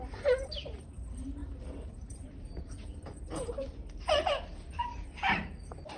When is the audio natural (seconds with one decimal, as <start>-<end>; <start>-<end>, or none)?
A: none